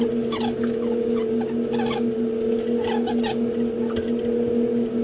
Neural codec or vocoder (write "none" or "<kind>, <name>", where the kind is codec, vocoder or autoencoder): none